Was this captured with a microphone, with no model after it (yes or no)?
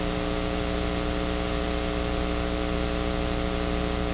yes